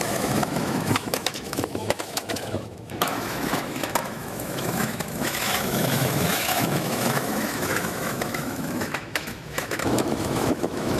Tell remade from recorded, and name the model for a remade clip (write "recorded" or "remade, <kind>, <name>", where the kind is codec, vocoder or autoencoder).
remade, autoencoder, DAC-VAE